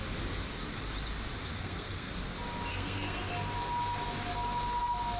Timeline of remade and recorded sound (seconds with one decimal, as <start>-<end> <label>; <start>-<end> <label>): 0.0-1.5 recorded; 1.5-2.1 remade; 2.1-2.7 recorded; 2.7-3.3 remade; 3.3-5.2 recorded